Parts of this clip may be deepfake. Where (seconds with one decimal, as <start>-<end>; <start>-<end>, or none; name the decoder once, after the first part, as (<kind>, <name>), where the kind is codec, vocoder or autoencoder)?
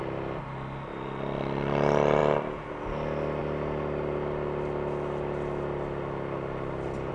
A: none